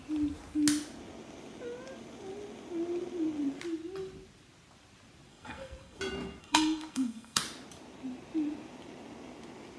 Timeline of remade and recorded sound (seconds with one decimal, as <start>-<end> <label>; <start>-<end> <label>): 0.0-5.3 recorded; 5.3-6.0 remade; 6.0-6.4 recorded; 6.4-7.4 remade; 7.4-9.8 recorded